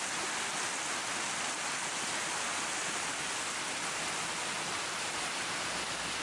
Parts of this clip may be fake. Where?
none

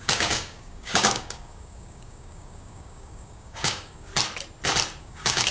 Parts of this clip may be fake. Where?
0.0-4.1 (codec, DAC); 5.0-5.5

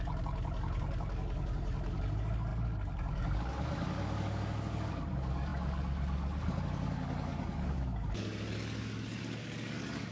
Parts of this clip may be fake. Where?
0.0-10.1 (codec, DAC)

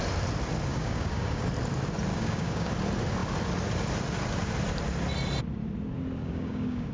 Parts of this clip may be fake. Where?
0.7-1.5 (codec, DAC); 2.1-2.7; 6.2-6.9

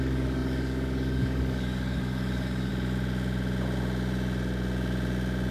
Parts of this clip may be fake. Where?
0.0-2.7 (codec, DAC)